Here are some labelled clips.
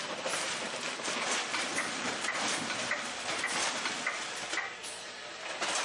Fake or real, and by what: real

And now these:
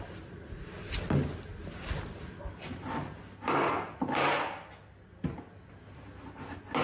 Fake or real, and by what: real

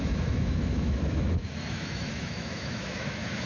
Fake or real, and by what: fake, autoencoder, DAC-VAE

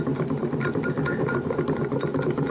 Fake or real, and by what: real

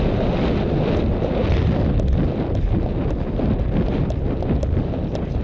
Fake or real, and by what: real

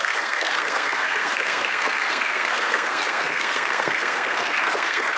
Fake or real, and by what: fake, codec, SNAC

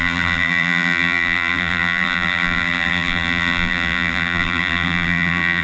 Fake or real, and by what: fake, vocoder, BigVGAN v2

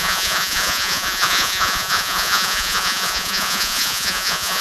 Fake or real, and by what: fake, vocoder, Vocos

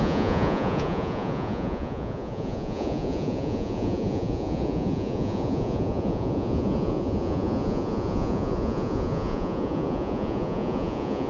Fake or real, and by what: fake, vocoder, Vocos